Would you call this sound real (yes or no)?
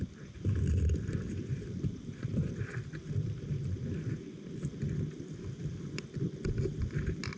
yes